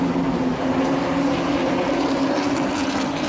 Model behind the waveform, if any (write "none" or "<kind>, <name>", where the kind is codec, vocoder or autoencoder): none